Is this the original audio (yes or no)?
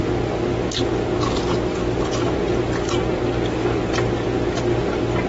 yes